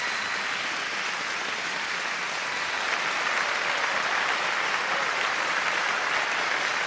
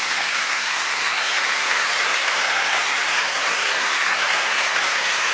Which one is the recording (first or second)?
first